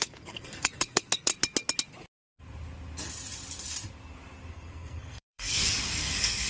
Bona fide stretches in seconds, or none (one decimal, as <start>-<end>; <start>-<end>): 1.3-4.5